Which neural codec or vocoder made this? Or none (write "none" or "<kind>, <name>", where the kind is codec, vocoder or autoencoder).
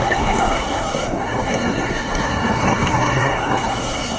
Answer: codec, SNAC